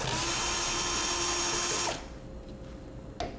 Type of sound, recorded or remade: recorded